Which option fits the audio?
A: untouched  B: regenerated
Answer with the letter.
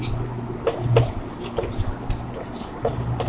A